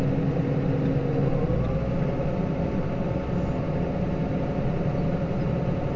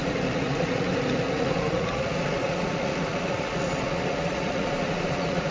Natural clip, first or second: first